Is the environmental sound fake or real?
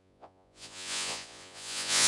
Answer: fake